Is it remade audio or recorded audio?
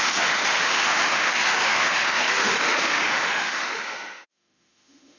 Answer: remade